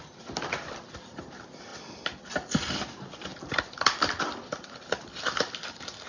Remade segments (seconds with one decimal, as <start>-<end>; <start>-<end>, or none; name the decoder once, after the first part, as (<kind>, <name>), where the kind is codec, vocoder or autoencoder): none